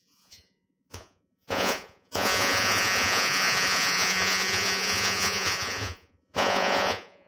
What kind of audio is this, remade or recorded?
remade